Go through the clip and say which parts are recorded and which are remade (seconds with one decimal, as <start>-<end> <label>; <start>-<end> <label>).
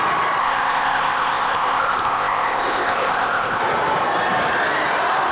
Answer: 0.0-0.4 recorded; 0.4-3.6 remade; 3.6-5.3 recorded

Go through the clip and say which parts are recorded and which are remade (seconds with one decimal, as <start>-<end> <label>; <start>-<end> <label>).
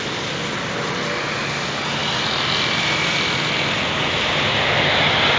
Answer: 0.0-5.4 recorded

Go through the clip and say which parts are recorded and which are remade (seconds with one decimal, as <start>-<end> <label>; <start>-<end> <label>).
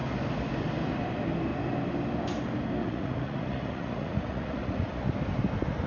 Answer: 0.0-2.8 recorded; 2.8-5.0 remade; 5.0-5.9 recorded